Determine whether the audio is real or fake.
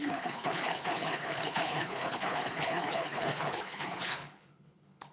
fake